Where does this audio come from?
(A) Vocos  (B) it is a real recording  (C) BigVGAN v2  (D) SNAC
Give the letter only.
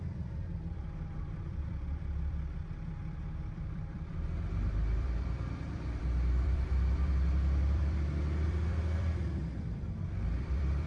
C